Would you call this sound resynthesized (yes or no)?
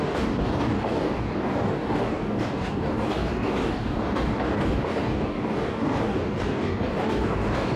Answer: yes